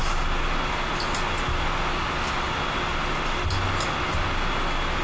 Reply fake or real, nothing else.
real